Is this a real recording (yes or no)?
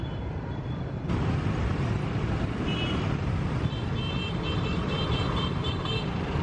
no